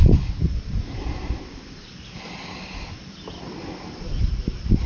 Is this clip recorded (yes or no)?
yes